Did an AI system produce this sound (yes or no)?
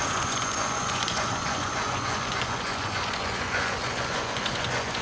yes